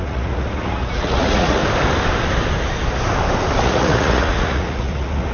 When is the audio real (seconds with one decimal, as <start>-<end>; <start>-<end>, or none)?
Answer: 1.6-3.6